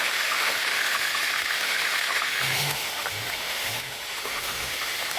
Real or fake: fake